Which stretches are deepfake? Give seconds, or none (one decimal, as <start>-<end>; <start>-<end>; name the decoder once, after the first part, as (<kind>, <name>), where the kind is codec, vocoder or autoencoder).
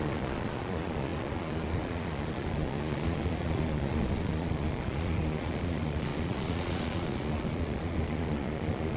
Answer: 0.0-9.0 (vocoder, Vocos)